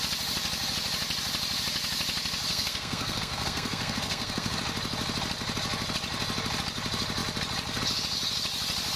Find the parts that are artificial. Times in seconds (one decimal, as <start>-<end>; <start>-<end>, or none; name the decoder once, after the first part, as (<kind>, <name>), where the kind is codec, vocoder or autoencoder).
2.5-4.6 (codec, SNAC)